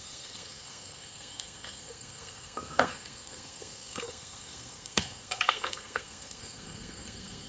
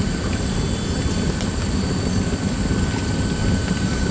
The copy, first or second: first